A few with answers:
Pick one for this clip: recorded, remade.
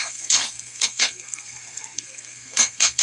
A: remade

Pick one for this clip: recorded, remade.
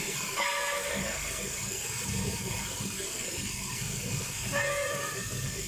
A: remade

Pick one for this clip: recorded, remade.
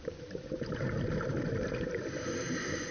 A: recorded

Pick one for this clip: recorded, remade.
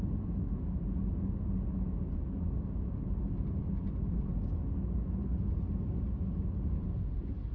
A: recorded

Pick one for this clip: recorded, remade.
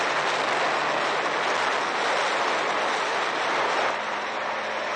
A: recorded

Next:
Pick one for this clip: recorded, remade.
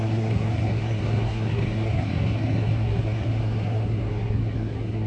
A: remade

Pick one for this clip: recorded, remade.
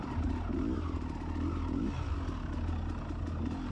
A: recorded